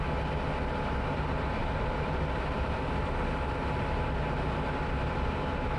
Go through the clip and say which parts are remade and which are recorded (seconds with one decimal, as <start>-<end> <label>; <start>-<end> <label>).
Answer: 0.0-5.8 recorded